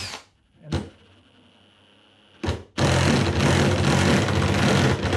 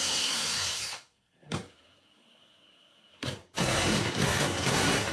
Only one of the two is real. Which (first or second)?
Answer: first